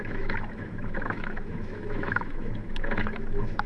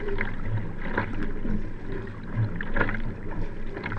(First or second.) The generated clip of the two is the first